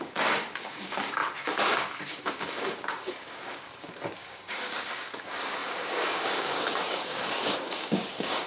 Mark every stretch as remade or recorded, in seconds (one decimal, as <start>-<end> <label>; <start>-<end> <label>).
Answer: 0.0-8.5 remade